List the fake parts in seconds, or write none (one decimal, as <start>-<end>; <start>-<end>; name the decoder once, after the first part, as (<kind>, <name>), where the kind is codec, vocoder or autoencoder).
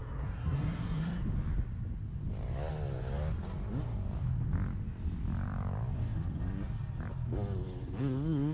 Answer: 0.0-1.2 (codec, SNAC)